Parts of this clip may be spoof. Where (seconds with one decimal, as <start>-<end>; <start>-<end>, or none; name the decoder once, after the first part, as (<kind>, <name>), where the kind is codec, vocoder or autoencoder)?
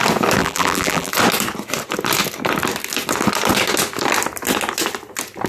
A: 0.4-1.1 (vocoder, BigVGAN v2)